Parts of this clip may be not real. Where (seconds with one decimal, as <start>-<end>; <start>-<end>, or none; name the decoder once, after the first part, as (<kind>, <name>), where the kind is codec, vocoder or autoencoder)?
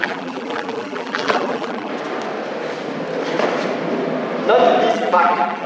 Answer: 0.0-1.9 (vocoder, BigVGAN v2); 4.9-5.7